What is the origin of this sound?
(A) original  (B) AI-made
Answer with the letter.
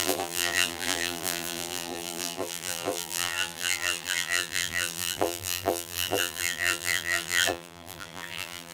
B